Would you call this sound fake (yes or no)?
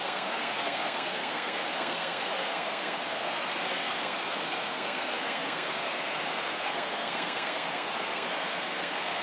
yes